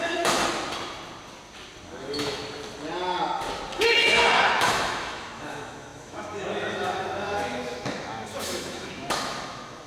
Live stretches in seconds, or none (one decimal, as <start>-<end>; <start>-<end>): 0.4-2.0; 2.4-3.7